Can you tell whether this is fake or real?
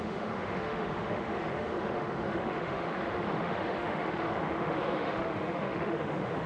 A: fake